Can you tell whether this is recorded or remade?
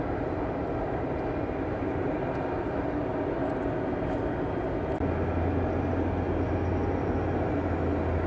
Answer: recorded